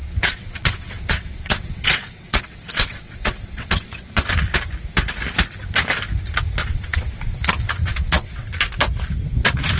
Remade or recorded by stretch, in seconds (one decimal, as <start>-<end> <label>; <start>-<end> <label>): 0.0-4.3 remade; 4.3-6.6 recorded; 6.6-7.5 remade; 7.5-7.9 recorded; 7.9-8.5 remade; 8.5-9.8 recorded